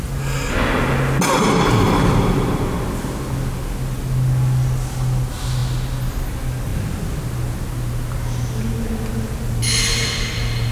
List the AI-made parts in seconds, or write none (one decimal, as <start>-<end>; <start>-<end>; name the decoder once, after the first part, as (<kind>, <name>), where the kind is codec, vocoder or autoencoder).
none